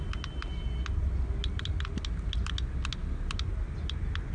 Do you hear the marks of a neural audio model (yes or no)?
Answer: no